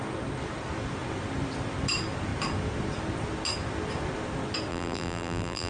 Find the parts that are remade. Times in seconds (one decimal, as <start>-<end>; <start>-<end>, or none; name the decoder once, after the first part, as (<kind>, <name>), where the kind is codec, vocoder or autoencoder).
4.7-5.7 (vocoder, BigVGAN v2)